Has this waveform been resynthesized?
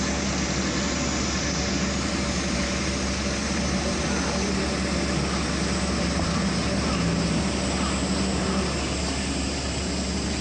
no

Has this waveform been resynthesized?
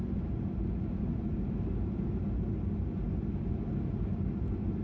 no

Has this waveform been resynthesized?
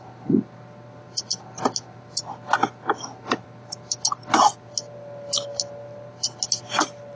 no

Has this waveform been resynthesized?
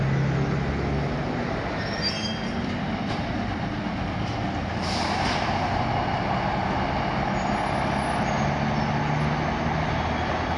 no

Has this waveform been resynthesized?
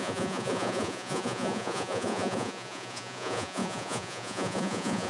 yes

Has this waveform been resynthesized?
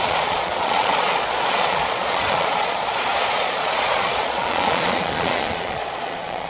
yes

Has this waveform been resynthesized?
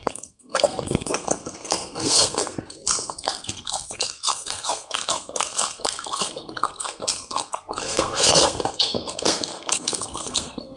yes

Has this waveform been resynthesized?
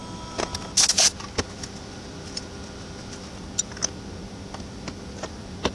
no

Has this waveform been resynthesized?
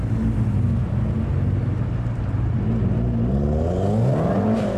no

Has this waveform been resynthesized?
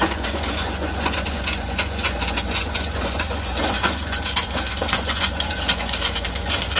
yes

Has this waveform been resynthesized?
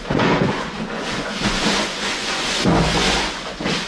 yes